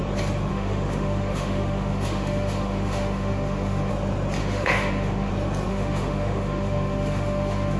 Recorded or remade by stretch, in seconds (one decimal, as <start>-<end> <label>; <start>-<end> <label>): 0.0-0.5 recorded; 0.5-3.9 remade; 3.9-4.4 recorded; 4.4-5.3 remade; 5.3-5.7 recorded; 5.7-7.8 remade